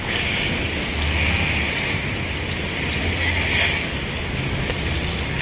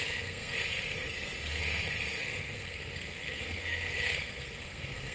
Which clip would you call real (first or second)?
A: first